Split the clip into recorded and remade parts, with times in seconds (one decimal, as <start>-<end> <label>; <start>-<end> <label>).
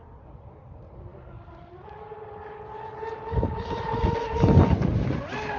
0.0-5.6 recorded